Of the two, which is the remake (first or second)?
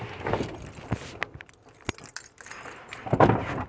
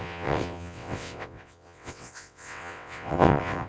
second